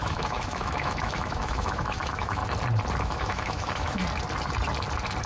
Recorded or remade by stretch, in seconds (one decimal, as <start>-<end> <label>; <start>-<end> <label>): 0.0-2.4 remade; 2.4-3.0 recorded; 3.0-4.0 remade; 4.0-5.3 recorded